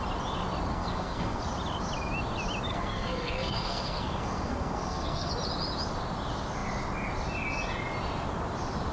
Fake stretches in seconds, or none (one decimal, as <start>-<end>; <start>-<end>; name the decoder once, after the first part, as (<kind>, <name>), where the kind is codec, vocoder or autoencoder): 0.7-1.4 (codec, SNAC); 2.7-5.3